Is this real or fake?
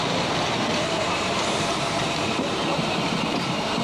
fake